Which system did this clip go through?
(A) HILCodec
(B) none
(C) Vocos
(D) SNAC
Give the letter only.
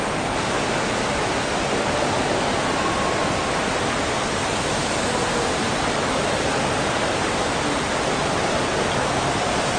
B